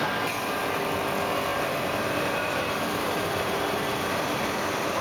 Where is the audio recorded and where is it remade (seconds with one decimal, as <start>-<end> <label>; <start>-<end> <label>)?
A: 0.0-1.5 recorded; 1.5-4.5 remade; 4.5-5.0 recorded